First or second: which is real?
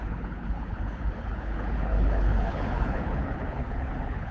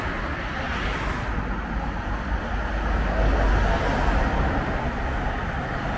second